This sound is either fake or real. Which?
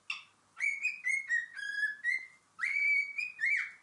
real